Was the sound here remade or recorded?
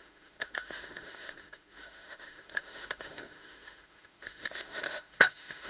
remade